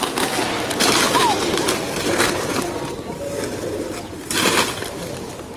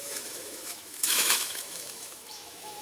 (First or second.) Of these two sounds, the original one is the first